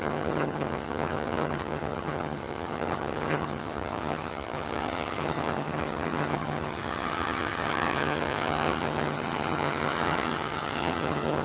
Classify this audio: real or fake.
fake